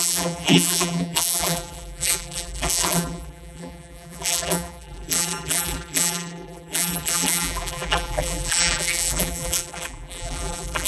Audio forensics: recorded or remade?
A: remade